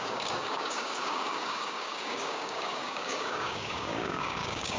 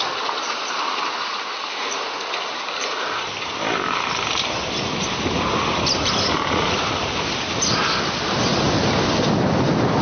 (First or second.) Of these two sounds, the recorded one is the second